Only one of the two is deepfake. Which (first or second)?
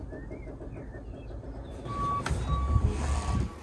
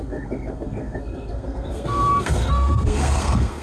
second